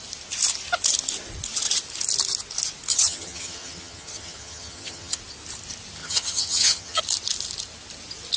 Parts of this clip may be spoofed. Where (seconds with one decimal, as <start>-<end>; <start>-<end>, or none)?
2.9-5.2; 6.0-7.0